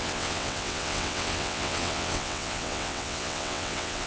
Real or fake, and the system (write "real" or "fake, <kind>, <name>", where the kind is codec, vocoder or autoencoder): fake, vocoder, WaveNeXt